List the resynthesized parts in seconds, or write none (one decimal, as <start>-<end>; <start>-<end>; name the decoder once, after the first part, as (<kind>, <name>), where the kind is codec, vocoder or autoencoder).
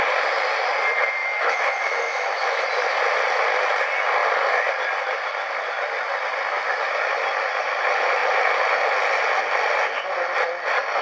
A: 1.2-2.7 (autoencoder, DAC-VAE)